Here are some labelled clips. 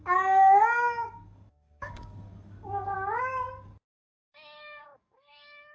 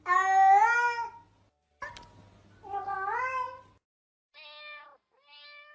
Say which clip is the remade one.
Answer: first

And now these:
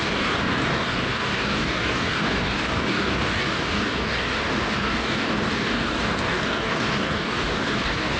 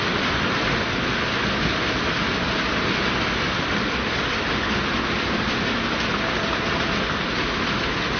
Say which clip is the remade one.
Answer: first